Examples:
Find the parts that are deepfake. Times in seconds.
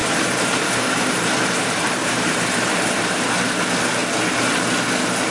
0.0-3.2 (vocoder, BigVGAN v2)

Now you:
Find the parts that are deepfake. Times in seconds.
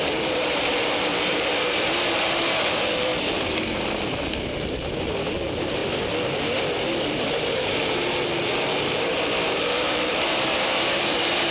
0.0-3.1 (vocoder, BigVGAN v2); 5.3-5.8; 6.9-11.5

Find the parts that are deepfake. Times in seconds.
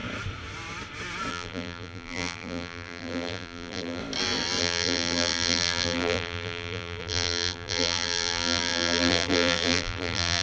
1.3-4.0 (vocoder, BigVGAN v2); 4.6-10.4